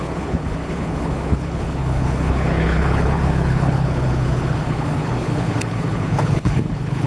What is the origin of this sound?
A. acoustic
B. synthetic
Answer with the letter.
B